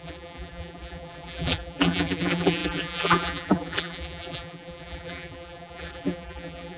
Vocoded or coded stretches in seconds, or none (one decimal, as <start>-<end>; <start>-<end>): 0.0-6.8